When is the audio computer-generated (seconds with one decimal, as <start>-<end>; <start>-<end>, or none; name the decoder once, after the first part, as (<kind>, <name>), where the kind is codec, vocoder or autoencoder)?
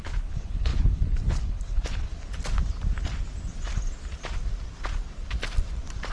0.0-2.1 (codec, HILCodec)